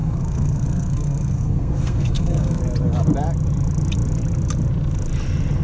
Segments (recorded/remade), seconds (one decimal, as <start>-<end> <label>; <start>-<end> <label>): 0.0-2.6 remade; 2.6-5.6 recorded